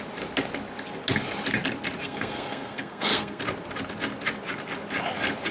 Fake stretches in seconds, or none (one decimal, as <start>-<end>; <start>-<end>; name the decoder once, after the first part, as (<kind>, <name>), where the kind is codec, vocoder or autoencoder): 2.0-3.4 (codec, SNAC)